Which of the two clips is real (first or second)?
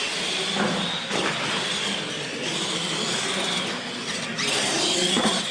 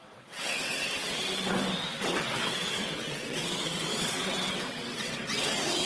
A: first